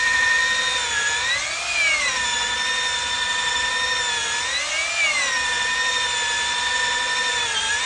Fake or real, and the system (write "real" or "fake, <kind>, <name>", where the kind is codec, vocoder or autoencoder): real